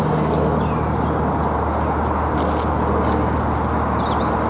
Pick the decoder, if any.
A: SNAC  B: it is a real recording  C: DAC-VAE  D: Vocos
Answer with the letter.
B